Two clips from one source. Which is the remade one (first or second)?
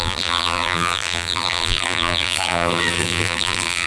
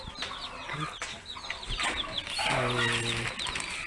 first